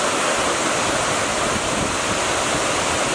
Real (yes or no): yes